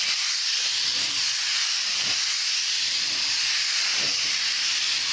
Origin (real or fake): real